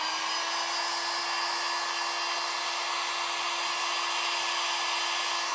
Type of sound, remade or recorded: recorded